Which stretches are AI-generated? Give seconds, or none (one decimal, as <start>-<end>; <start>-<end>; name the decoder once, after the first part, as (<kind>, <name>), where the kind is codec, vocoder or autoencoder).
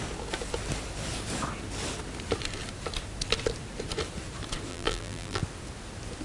4.7-5.4 (vocoder, BigVGAN v2)